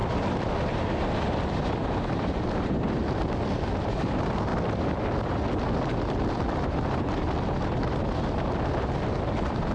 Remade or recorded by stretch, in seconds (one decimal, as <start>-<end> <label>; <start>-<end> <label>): 0.0-2.9 remade; 2.9-4.5 recorded; 4.5-7.1 remade; 7.1-9.7 recorded

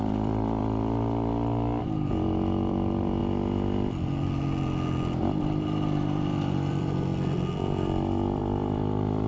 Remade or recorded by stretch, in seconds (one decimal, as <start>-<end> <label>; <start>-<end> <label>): 0.0-0.6 remade; 0.6-1.8 recorded; 1.8-3.2 remade; 3.2-5.4 recorded; 5.4-7.1 remade; 7.1-7.8 recorded; 7.8-9.3 remade